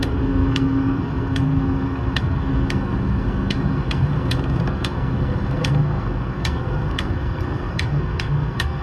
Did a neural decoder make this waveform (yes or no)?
yes